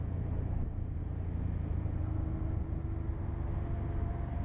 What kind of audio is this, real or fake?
real